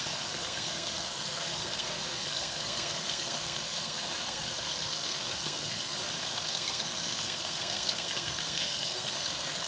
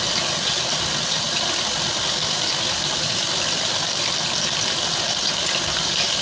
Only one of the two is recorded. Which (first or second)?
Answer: second